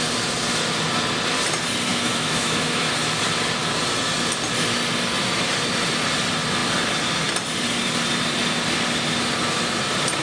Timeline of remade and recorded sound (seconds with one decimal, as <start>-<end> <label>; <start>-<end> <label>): 0.0-1.9 recorded; 1.9-2.9 remade; 2.9-10.2 recorded